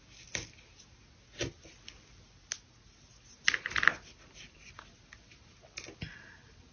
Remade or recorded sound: recorded